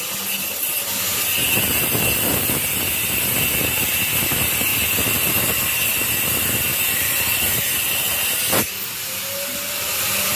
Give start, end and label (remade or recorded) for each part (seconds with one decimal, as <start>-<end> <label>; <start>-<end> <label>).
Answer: 0.0-10.4 recorded